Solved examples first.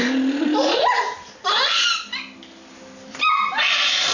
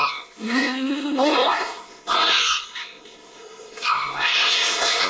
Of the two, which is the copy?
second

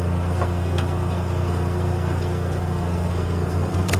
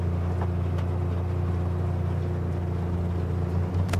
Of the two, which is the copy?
first